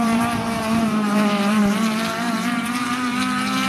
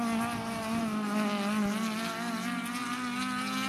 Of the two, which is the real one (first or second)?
second